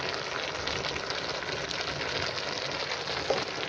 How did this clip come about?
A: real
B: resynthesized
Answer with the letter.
A